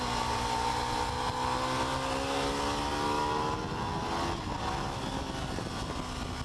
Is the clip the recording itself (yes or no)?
yes